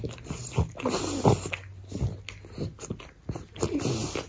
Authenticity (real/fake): real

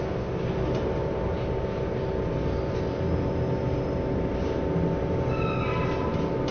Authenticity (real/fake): real